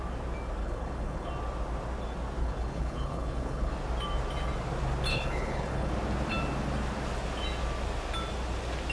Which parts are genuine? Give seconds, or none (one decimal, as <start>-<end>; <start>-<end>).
0.0-0.6; 1.3-2.4; 3.7-5.1; 5.9-8.9